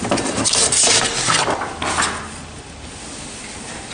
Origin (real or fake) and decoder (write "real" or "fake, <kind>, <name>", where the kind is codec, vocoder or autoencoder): real